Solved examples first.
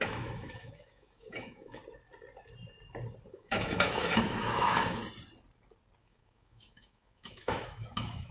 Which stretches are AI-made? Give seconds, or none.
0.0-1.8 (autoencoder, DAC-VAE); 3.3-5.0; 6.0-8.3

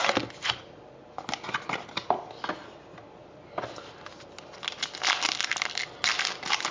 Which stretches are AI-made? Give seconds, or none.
none